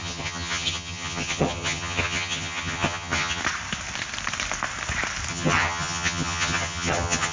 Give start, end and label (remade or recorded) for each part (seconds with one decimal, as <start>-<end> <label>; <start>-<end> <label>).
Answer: 0.0-3.4 remade; 3.4-5.3 recorded; 5.3-7.3 remade